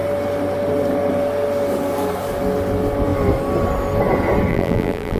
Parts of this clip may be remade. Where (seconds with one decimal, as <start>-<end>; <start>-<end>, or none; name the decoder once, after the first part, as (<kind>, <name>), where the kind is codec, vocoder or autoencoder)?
4.5-5.2 (vocoder, BigVGAN v2)